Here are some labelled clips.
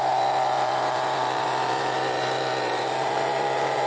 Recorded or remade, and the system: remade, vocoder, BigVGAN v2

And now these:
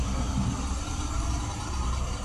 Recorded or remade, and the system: remade, vocoder, BigVGAN v2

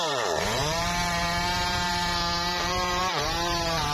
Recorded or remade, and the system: remade, vocoder, BigVGAN v2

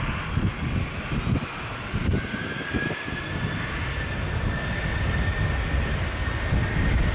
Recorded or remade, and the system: recorded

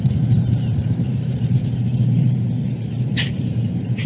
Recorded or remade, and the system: remade, vocoder, BigVGAN v2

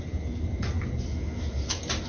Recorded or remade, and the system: recorded